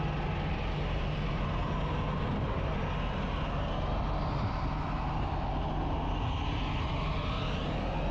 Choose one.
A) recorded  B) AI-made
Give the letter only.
A